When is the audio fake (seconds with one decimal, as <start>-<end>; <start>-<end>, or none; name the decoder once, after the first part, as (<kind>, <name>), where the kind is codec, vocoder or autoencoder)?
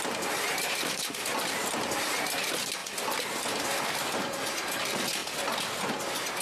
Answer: none